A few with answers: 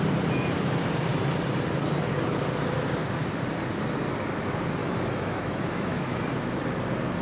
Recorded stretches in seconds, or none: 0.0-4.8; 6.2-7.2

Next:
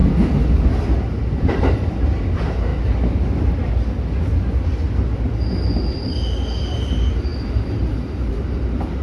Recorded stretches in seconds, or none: 0.0-1.4; 2.7-6.6